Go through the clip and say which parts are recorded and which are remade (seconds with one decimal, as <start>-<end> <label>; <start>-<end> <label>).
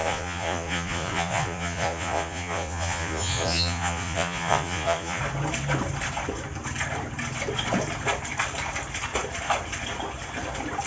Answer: 0.0-5.2 remade; 5.2-10.9 recorded